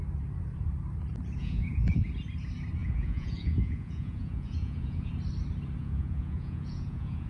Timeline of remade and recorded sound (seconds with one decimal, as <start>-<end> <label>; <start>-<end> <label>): 0.0-1.4 recorded; 1.4-2.0 remade; 2.0-2.8 recorded; 2.8-5.1 remade; 5.1-5.8 recorded; 5.8-7.3 remade